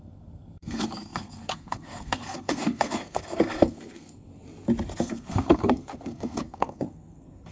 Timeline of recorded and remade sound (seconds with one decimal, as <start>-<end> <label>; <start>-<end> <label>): 0.0-4.3 remade; 4.3-5.0 recorded; 5.0-7.5 remade